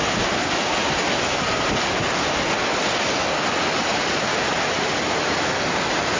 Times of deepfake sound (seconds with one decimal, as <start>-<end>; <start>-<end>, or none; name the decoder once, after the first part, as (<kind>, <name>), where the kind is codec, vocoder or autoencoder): none